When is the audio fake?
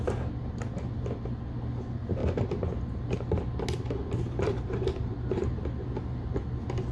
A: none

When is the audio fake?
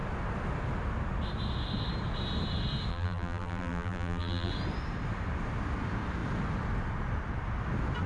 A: 2.9-4.5 (vocoder, BigVGAN v2)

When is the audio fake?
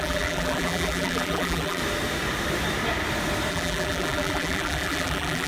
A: 0.0-1.8 (vocoder, BigVGAN v2); 3.5-5.5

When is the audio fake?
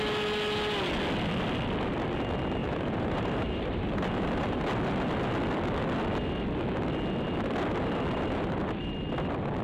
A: 2.6-4.6 (vocoder, BigVGAN v2)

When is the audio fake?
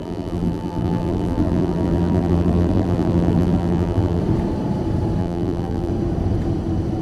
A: 0.0-4.2 (vocoder, BigVGAN v2); 5.2-5.9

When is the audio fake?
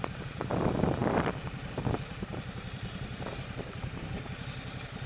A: 1.0-4.1 (vocoder, BigVGAN v2)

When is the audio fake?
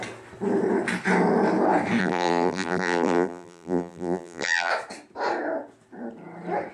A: 2.0-4.7 (vocoder, BigVGAN v2)